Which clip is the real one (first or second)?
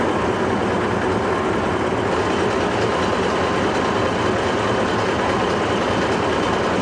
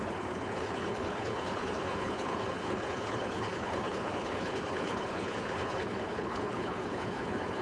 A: first